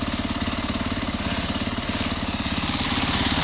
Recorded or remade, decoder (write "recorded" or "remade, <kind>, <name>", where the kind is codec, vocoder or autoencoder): recorded